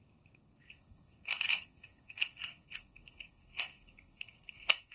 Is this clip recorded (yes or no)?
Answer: no